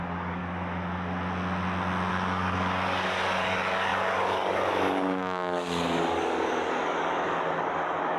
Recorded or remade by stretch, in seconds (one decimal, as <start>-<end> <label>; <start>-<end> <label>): 0.0-0.4 remade; 0.4-2.1 recorded; 2.1-8.2 remade